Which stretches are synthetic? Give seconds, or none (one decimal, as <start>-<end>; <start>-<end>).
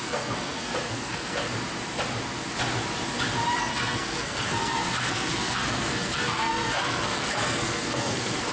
0.0-1.5; 3.6-8.5